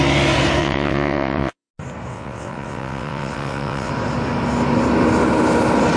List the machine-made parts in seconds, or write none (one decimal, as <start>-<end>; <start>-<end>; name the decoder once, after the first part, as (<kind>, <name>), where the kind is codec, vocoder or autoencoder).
0.6-1.7 (vocoder, WaveNeXt); 2.1-3.9